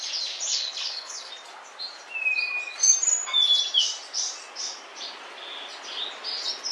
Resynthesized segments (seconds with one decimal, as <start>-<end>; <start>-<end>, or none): 0.5-1.3